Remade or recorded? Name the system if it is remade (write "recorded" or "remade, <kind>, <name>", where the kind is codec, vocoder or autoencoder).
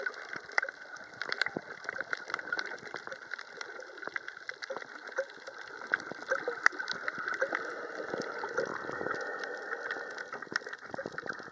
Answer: recorded